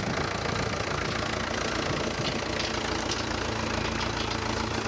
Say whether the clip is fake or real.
real